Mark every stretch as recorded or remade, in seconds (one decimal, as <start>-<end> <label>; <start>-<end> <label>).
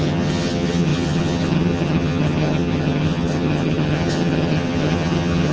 0.0-5.5 remade